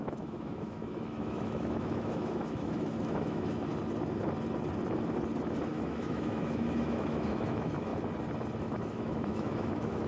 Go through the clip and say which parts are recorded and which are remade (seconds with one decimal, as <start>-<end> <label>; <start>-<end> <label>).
0.0-3.7 remade; 3.7-5.7 recorded; 5.7-7.9 remade; 7.9-8.6 recorded; 8.6-10.1 remade